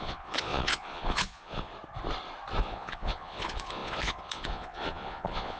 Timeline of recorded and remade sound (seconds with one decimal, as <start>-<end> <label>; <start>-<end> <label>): 0.0-1.7 remade; 1.7-2.6 recorded; 2.6-5.6 remade